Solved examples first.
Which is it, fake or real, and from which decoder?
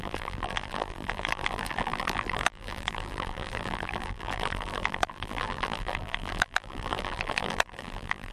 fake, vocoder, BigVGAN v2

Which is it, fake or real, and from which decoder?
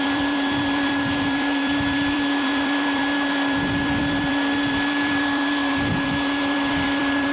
fake, vocoder, BigVGAN v2